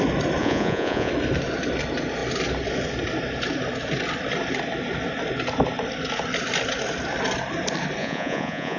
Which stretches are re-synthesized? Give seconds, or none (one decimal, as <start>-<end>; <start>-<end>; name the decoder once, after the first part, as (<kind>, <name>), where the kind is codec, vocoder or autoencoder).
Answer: 0.4-1.1 (vocoder, Vocos); 8.0-8.8

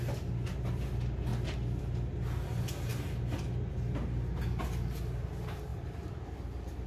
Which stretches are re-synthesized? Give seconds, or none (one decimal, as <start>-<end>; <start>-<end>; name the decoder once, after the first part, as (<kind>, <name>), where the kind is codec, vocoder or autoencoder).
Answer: 5.7-6.9 (vocoder, BigVGAN v2)

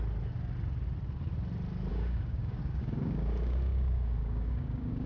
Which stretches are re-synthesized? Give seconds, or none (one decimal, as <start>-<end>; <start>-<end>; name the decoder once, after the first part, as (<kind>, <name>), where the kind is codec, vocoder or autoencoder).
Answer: 1.9-5.1 (codec, DAC)

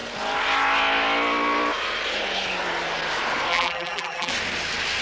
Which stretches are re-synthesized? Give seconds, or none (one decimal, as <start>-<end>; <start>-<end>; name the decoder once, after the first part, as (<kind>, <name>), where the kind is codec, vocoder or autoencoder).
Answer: 3.5-4.3 (vocoder, BigVGAN v2)

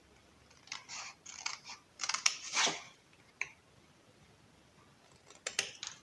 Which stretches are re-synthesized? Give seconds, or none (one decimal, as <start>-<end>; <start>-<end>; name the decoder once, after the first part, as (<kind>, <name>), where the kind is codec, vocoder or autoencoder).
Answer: 1.5-3.3 (vocoder, BigVGAN v2)